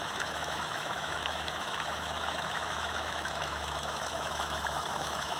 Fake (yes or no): yes